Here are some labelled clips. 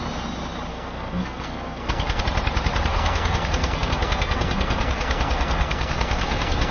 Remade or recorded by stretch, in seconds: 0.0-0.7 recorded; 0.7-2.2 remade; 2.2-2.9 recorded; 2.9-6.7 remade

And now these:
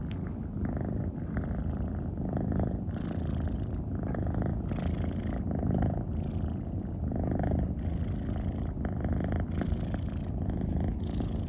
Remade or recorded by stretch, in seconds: 0.0-11.5 recorded

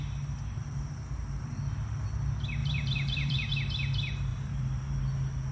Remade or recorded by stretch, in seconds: 0.0-0.6 recorded; 0.6-1.6 remade; 1.6-2.6 recorded; 2.6-3.5 remade; 3.5-4.3 recorded; 4.3-5.0 remade; 5.0-5.5 recorded

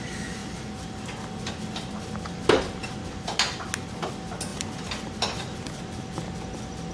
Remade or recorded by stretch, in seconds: 0.0-4.5 recorded; 4.5-5.7 remade; 5.7-6.9 recorded

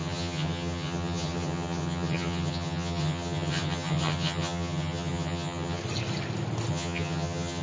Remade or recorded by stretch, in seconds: 0.0-5.8 remade; 5.8-6.7 recorded; 6.7-7.6 remade

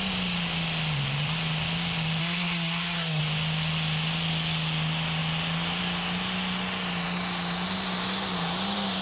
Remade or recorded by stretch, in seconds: 0.0-2.2 recorded; 2.2-3.2 remade; 3.2-9.0 recorded

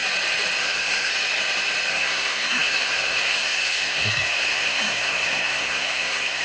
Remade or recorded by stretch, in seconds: 0.0-0.6 recorded; 0.6-1.1 remade; 1.1-1.9 recorded; 1.9-6.4 remade

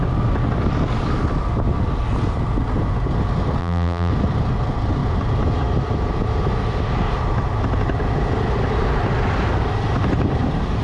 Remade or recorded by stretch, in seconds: 0.0-3.6 recorded; 3.6-4.1 remade; 4.1-10.8 recorded